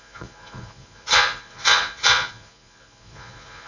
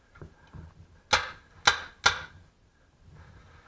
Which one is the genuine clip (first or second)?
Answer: second